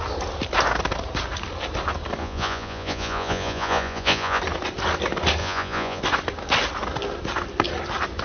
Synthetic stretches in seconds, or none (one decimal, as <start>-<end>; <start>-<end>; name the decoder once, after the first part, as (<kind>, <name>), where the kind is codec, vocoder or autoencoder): 2.2-4.4 (vocoder, Vocos); 5.4-6.0